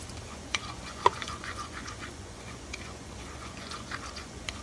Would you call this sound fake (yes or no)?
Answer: yes